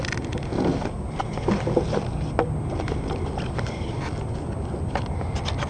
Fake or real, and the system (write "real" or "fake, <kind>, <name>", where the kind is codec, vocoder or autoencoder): real